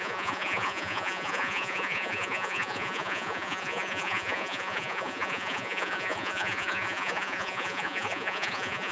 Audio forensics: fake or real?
fake